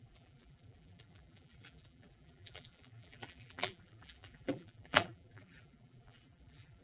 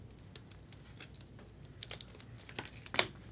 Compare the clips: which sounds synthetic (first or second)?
first